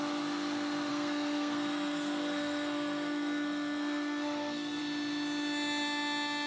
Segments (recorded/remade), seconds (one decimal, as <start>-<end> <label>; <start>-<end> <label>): 0.0-0.9 recorded; 0.9-4.8 remade; 4.8-6.5 recorded